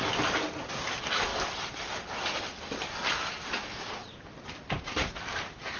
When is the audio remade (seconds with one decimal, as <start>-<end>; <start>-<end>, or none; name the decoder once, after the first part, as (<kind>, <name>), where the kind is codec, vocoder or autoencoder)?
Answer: none